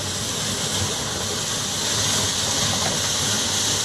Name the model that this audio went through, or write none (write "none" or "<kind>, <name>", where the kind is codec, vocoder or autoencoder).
none